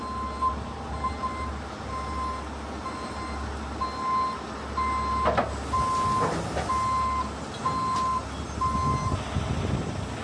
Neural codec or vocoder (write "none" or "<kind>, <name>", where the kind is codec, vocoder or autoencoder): none